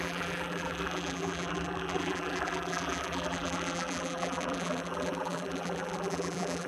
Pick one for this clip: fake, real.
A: fake